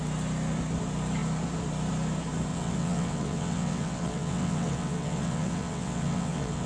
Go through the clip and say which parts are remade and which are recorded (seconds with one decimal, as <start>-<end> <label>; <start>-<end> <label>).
0.0-2.5 recorded; 2.5-6.7 remade